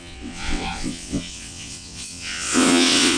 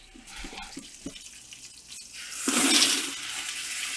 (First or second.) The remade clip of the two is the first